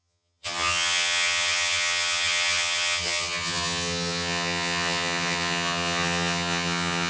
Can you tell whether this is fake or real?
fake